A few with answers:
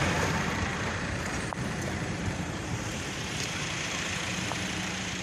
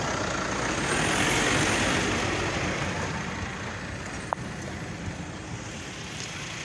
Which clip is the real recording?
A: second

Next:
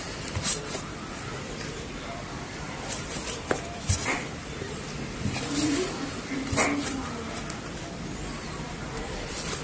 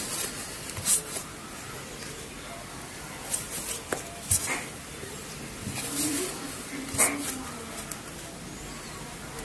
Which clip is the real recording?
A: second